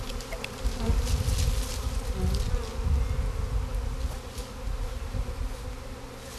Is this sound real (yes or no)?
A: yes